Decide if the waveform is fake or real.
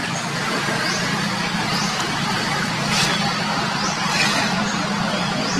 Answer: real